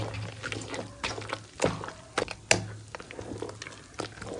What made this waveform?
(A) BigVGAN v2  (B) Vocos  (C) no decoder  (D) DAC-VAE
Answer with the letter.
C